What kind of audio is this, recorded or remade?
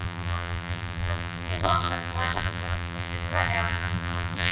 remade